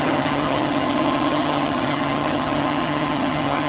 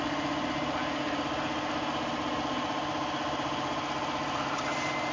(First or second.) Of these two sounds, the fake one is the first